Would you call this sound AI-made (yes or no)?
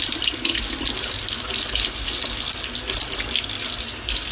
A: no